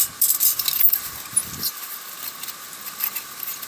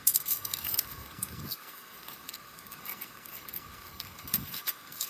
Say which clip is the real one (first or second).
first